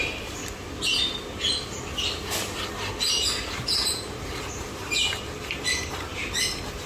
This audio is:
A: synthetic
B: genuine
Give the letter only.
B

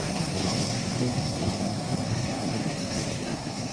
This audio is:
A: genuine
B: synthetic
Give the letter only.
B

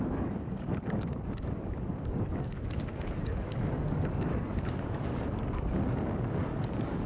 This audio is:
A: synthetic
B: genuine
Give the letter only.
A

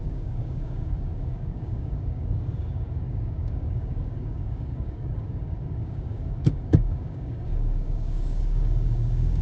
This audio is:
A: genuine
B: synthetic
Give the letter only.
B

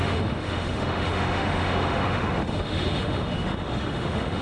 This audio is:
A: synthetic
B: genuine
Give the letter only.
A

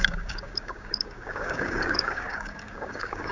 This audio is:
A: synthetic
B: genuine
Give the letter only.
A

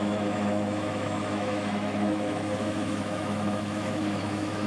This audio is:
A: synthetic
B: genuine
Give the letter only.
A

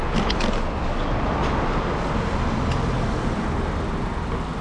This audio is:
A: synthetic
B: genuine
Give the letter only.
B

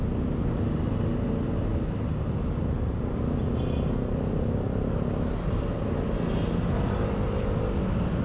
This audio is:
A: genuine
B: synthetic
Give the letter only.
A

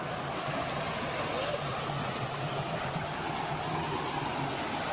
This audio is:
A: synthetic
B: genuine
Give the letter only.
B